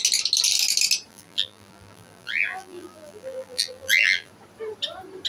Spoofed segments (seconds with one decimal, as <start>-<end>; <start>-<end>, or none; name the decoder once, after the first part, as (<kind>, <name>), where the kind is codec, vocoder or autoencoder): 1.1-4.3 (vocoder, BigVGAN v2)